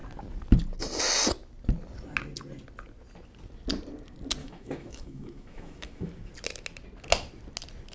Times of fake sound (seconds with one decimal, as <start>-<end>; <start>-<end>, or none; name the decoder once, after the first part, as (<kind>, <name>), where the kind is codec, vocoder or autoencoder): 4.4-6.1 (autoencoder, DAC-VAE)